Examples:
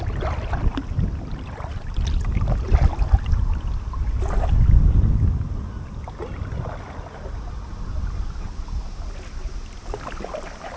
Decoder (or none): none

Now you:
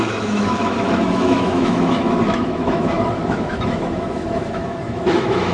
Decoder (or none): autoencoder, DAC-VAE